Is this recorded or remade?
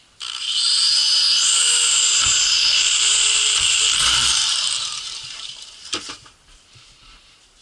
remade